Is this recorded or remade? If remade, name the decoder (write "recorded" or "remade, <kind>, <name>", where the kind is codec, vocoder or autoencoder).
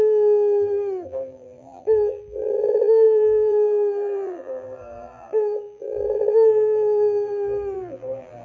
remade, vocoder, BigVGAN v2